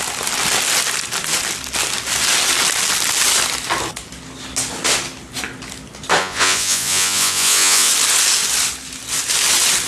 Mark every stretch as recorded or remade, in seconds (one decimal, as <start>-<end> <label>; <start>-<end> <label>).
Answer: 0.0-6.2 recorded; 6.2-7.9 remade; 7.9-9.9 recorded

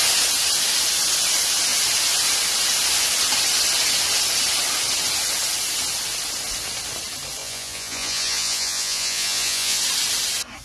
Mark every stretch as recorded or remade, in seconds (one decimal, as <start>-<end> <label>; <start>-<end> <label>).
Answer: 0.0-7.4 recorded; 7.4-9.8 remade; 9.8-10.6 recorded

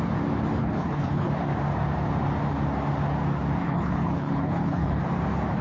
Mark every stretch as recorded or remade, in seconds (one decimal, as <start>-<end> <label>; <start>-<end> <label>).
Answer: 0.0-0.6 recorded; 0.6-1.3 remade; 1.3-3.6 recorded; 3.6-5.0 remade; 5.0-5.6 recorded